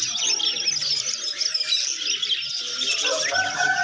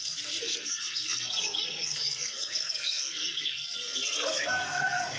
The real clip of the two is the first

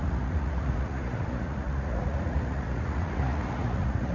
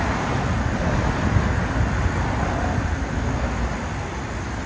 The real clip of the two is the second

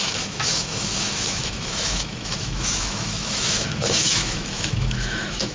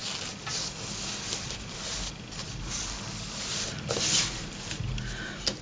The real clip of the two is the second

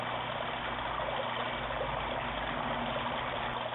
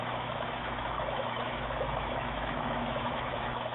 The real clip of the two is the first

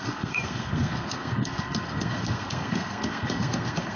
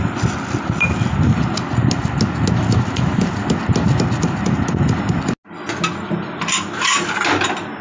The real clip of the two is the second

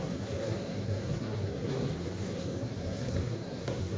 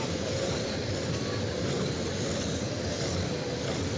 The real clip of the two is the second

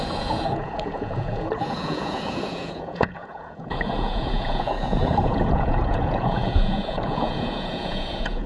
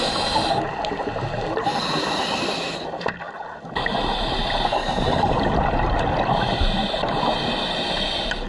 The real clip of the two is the second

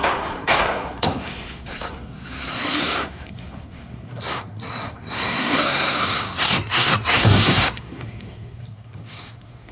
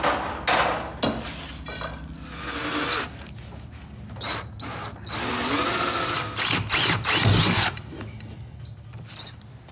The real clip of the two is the second